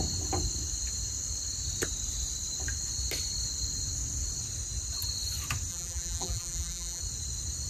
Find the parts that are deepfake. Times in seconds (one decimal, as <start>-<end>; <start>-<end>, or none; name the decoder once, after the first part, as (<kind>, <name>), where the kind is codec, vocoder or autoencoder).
5.7-7.0 (vocoder, BigVGAN v2)